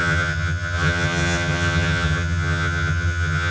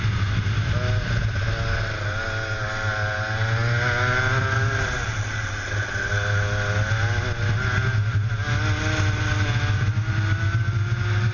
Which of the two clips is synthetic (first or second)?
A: first